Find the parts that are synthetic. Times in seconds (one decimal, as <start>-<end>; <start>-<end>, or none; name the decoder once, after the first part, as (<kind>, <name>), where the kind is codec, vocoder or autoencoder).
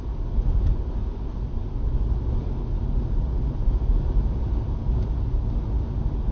none